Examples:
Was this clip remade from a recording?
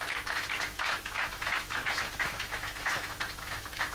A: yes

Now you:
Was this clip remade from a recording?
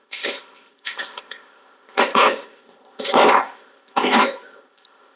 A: yes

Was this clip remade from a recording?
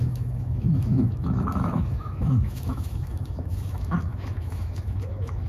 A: yes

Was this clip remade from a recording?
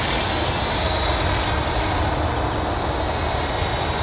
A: no